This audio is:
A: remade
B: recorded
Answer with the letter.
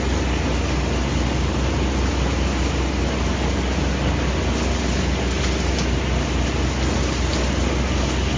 B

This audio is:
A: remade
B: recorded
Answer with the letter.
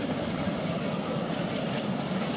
B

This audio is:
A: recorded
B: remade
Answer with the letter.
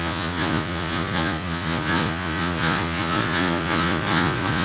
B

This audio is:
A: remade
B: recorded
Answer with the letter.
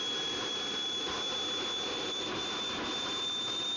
A